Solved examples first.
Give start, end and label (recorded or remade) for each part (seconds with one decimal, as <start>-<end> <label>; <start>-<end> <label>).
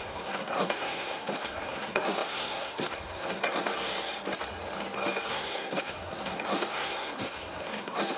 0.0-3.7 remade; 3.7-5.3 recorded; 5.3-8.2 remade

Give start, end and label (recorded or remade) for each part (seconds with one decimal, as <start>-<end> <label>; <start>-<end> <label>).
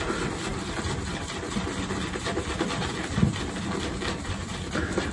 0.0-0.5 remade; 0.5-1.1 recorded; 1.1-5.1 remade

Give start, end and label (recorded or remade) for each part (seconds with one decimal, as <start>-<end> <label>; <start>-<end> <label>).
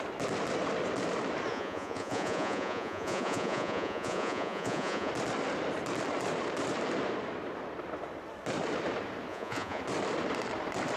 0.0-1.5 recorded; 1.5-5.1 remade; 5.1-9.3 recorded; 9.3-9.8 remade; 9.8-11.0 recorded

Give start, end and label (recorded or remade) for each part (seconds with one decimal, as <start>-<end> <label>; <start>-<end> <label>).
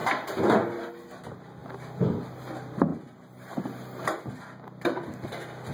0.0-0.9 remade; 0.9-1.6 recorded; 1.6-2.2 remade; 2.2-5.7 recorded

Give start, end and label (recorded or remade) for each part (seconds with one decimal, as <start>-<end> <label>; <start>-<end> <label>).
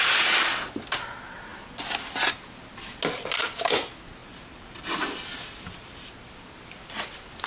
0.0-4.2 recorded; 4.2-6.1 remade; 6.1-7.5 recorded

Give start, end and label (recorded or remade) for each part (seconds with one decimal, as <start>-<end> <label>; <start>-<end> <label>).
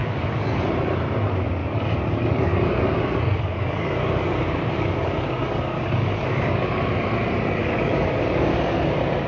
0.0-0.6 remade; 0.6-1.6 recorded; 1.6-6.8 remade; 6.8-7.6 recorded; 7.6-8.8 remade; 8.8-9.3 recorded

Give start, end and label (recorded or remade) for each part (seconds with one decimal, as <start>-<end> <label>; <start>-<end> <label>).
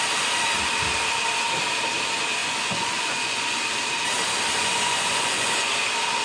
0.0-2.4 recorded; 2.4-3.6 remade; 3.6-4.5 recorded; 4.5-5.7 remade; 5.7-6.2 recorded